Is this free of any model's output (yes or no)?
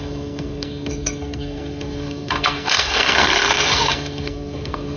no